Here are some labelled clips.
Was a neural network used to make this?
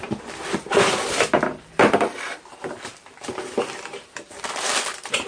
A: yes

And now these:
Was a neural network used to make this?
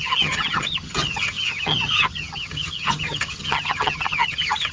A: yes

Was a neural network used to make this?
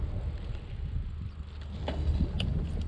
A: no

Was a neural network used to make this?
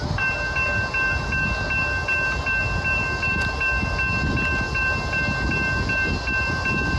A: no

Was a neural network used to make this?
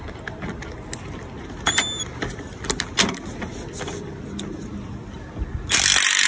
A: no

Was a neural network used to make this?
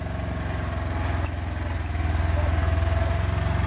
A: no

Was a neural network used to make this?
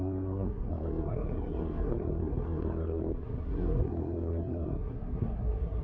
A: yes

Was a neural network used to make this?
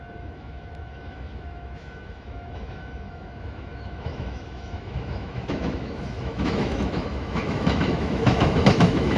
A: yes